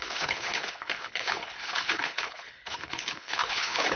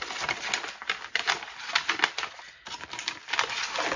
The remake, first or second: first